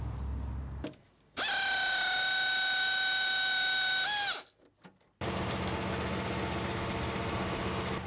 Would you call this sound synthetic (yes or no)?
no